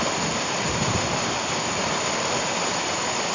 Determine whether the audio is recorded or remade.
recorded